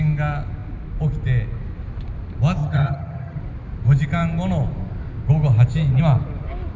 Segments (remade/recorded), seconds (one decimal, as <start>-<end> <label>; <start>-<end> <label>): 0.0-2.6 recorded; 2.6-3.4 remade; 3.4-6.8 recorded